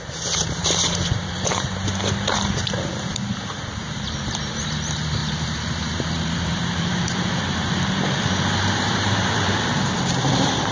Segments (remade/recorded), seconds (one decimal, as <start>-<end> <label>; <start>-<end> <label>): 0.0-10.7 remade